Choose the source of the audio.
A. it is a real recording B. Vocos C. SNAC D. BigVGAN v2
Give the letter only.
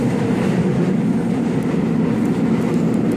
A